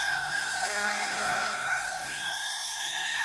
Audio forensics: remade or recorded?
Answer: remade